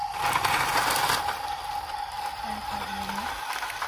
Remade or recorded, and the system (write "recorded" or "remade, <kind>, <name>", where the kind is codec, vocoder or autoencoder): recorded